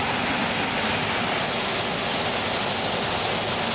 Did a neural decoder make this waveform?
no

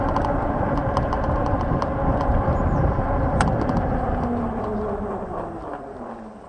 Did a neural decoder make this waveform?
no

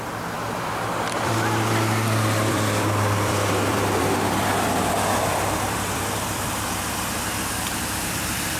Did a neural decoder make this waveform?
yes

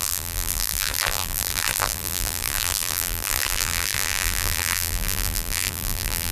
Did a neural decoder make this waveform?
yes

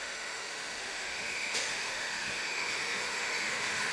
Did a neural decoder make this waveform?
yes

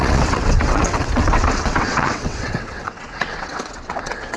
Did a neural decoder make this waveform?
yes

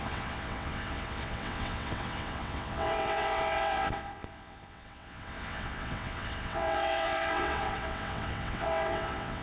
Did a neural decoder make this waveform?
yes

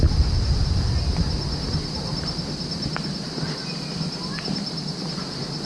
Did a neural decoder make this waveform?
no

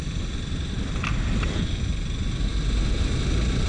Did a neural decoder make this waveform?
no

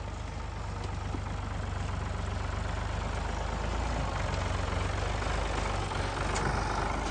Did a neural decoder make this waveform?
no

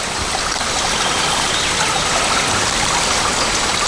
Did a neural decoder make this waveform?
no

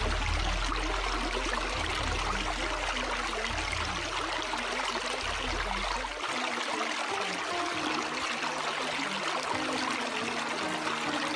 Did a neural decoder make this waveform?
no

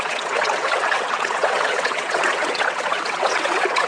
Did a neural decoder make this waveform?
yes